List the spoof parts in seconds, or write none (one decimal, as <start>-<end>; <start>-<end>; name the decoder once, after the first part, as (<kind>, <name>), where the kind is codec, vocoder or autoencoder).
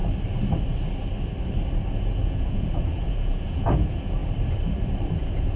1.9-4.2 (vocoder, Vocos); 5.1-5.6